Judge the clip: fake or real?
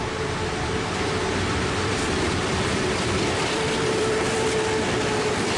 fake